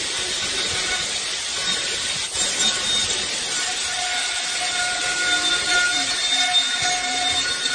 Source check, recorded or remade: recorded